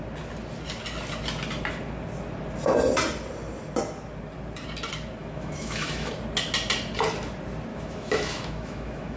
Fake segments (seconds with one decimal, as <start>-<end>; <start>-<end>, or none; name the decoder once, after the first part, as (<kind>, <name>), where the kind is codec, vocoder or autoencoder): 5.2-6.1 (autoencoder, DAC-VAE); 7.7-9.2

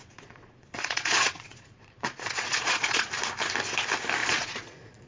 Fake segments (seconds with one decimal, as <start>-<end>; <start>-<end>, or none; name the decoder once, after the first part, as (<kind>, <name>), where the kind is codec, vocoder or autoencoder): 0.0-3.1 (vocoder, Vocos); 4.2-5.1